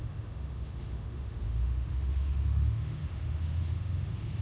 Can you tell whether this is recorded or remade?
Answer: remade